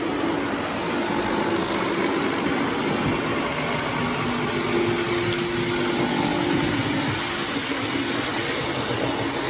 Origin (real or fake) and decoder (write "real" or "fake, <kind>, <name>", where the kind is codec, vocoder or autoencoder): real